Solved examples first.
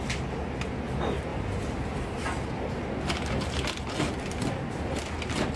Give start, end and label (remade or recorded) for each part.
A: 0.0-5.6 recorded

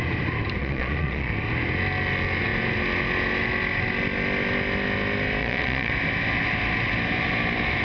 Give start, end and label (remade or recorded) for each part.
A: 0.0-0.6 recorded; 0.6-1.3 remade; 1.3-5.4 recorded; 5.4-5.9 remade; 5.9-7.8 recorded

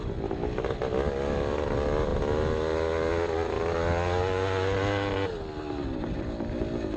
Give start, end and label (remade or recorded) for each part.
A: 0.0-7.0 recorded

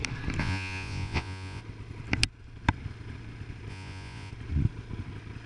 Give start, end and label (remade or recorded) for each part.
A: 0.0-0.4 recorded; 0.4-1.6 remade; 1.6-3.7 recorded; 3.7-4.3 remade; 4.3-5.5 recorded

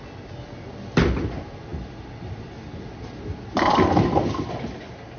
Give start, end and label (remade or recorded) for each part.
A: 0.0-5.2 recorded

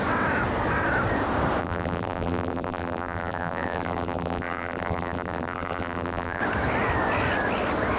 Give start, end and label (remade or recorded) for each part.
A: 0.0-1.6 recorded; 1.6-6.4 remade; 6.4-8.0 recorded

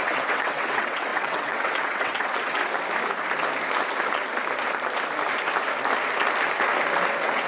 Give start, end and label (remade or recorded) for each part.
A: 0.0-2.6 remade; 2.6-7.1 recorded; 7.1-7.5 remade

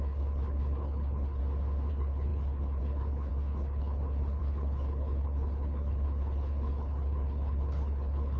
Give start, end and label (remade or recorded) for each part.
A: 0.0-1.4 remade; 1.4-1.9 recorded; 1.9-8.4 remade